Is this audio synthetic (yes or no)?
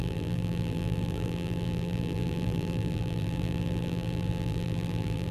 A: yes